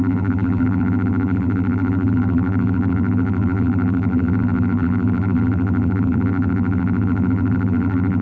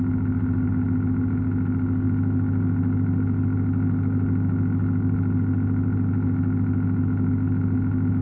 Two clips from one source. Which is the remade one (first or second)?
first